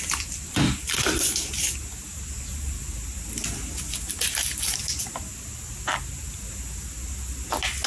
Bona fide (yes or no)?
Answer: yes